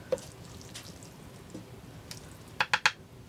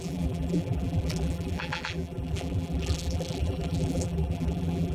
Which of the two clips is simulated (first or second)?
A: second